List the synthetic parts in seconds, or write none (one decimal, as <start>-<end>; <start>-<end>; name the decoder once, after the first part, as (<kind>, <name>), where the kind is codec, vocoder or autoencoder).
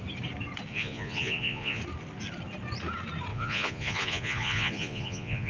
0.7-1.8 (vocoder, Vocos); 3.3-5.5